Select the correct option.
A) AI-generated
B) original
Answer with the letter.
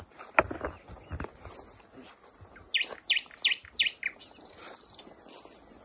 B